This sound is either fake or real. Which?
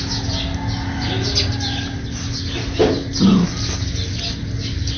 real